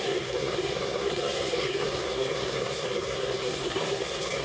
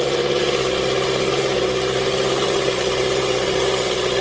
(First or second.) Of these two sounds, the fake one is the first